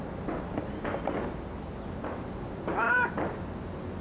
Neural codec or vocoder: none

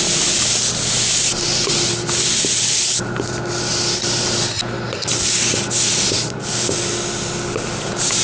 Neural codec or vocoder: none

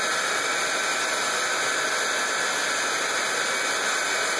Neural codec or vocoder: none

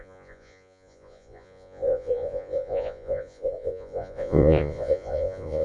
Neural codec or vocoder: vocoder, Vocos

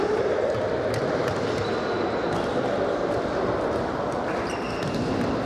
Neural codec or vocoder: none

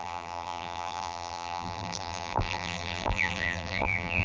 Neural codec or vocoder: vocoder, BigVGAN v2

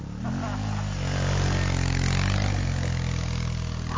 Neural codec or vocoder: none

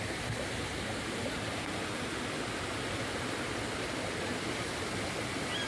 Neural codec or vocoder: none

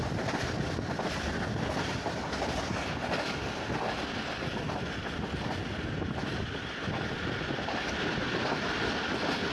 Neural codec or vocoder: none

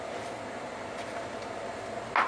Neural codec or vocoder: none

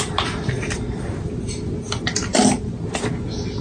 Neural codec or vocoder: none